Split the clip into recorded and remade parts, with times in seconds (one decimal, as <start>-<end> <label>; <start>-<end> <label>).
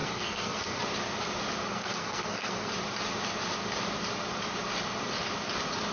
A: 0.0-0.8 remade; 0.8-1.7 recorded; 1.7-2.7 remade; 2.7-5.9 recorded